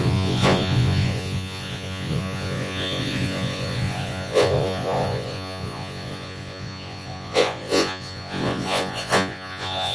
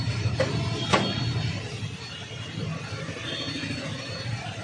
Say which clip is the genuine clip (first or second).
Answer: second